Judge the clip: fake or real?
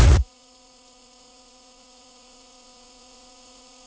fake